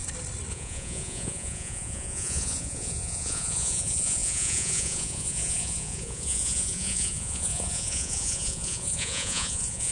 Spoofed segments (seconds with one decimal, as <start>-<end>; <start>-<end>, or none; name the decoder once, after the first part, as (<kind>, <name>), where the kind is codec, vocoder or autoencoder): 0.5-9.9 (vocoder, Vocos)

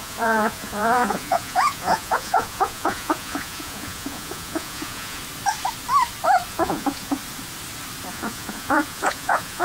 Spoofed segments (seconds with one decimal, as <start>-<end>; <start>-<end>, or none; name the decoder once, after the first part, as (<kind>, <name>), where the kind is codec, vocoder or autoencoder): 0.0-5.2 (vocoder, Vocos); 6.5-7.2; 8.1-9.6

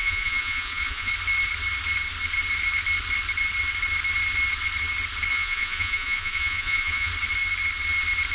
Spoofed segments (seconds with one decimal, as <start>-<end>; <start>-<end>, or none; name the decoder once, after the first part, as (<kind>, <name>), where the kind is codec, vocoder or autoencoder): 0.0-1.1 (vocoder, Vocos); 5.3-7.1

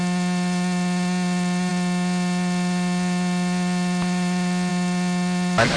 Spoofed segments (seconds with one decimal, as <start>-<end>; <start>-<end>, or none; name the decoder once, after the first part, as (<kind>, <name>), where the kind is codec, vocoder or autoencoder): none

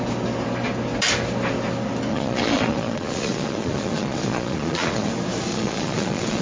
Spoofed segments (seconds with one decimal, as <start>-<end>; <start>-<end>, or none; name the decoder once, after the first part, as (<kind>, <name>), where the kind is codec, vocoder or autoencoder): 2.1-5.1 (vocoder, Vocos); 5.5-6.4

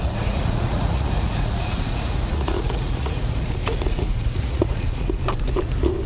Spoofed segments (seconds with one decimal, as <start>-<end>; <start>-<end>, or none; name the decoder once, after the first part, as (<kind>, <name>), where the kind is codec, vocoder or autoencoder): 0.0-5.2 (vocoder, Vocos)

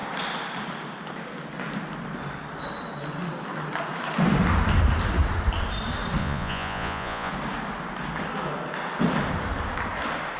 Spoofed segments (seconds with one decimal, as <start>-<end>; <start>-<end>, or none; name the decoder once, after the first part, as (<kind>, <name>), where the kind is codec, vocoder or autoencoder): 6.2-7.3 (vocoder, Vocos)